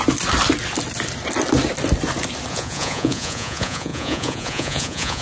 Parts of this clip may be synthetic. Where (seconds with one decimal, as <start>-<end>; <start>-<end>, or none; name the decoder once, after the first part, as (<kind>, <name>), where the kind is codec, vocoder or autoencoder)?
2.5-5.2 (vocoder, Vocos)